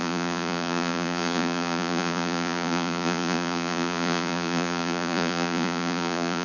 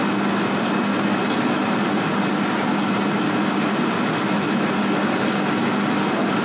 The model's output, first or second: first